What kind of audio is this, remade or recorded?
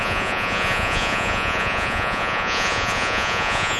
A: remade